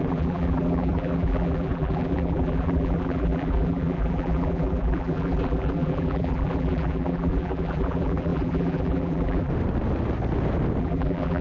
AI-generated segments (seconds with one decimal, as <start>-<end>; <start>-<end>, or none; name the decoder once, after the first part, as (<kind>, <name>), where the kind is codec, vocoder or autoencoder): 0.0-9.5 (vocoder, BigVGAN v2); 10.8-11.4